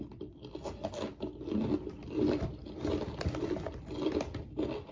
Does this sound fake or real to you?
real